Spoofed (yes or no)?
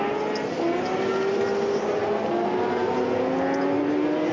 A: no